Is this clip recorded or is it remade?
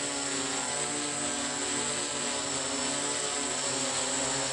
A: recorded